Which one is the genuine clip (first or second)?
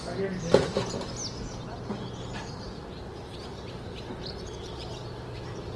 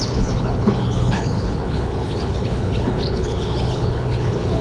first